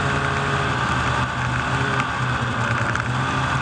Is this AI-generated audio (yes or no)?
no